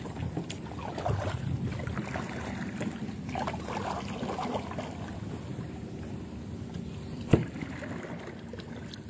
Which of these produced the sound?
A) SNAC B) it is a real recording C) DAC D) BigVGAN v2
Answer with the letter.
B